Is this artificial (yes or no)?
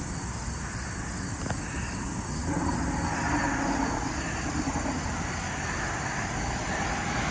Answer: no